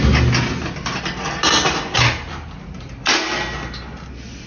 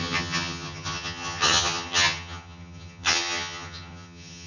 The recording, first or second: first